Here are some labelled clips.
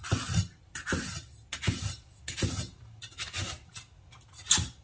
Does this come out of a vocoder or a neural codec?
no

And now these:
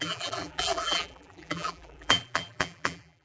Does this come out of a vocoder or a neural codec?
yes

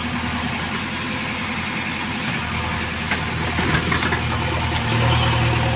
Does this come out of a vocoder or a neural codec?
no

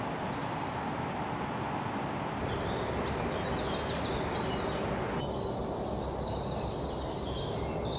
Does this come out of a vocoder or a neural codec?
no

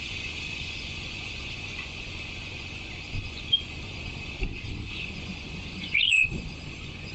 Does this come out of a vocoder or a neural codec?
yes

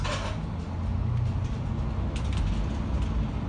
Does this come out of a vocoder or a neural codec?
no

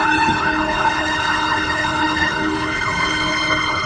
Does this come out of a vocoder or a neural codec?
yes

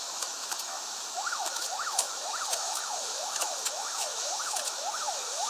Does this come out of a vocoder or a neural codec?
yes